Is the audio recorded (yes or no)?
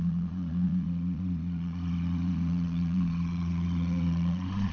no